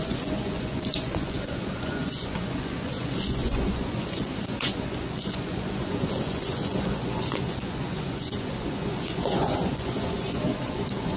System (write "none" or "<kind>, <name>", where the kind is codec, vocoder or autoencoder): vocoder, Vocos